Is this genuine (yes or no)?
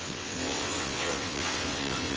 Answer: no